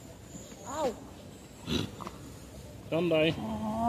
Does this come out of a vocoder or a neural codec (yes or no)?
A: no